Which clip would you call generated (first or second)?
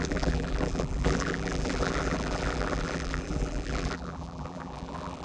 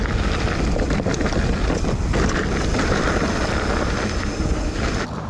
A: first